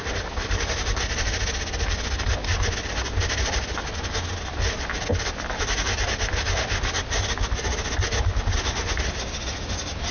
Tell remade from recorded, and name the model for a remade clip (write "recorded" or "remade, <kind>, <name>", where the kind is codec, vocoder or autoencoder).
recorded